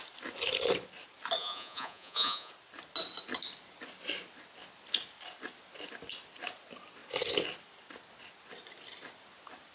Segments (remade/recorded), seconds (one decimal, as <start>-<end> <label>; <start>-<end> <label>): 0.0-1.4 recorded; 1.4-2.5 remade; 2.5-9.7 recorded